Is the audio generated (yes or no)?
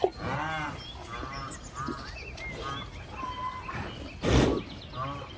no